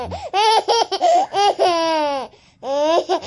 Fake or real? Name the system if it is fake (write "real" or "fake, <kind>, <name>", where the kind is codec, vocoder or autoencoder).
real